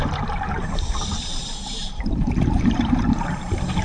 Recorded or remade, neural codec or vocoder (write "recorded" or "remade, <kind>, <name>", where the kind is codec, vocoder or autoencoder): remade, vocoder, BigVGAN v2